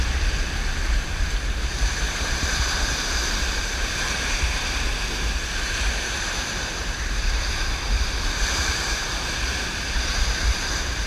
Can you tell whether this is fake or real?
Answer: fake